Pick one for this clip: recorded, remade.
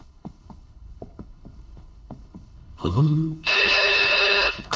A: remade